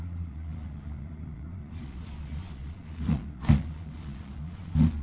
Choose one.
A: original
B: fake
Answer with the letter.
B